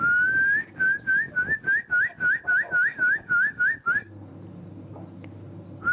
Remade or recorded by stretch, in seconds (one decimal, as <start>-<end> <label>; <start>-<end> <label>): 0.0-2.9 recorded; 2.9-3.6 remade; 3.6-5.9 recorded